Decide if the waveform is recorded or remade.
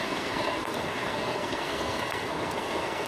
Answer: remade